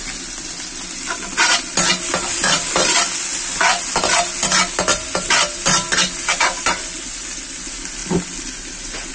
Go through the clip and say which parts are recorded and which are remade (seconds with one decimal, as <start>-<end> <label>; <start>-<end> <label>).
0.0-9.1 recorded